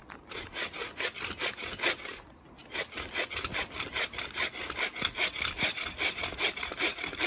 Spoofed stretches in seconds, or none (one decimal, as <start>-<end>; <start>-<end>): 0.0-0.6